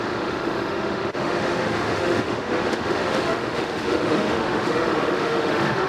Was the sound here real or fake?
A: fake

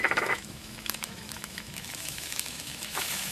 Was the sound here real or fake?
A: fake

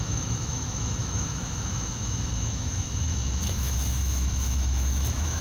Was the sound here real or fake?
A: fake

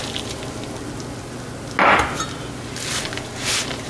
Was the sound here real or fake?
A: real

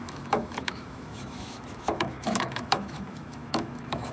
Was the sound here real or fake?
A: fake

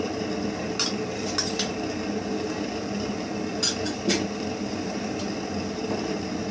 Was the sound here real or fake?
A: real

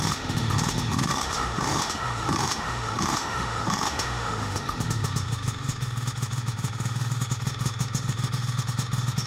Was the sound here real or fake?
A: fake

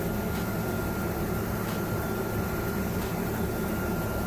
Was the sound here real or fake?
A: real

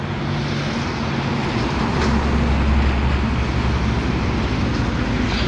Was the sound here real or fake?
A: real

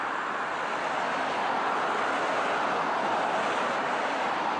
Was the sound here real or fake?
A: real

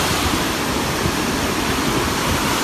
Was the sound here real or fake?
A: real